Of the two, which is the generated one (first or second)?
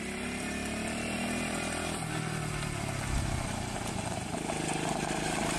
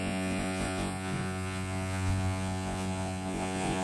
second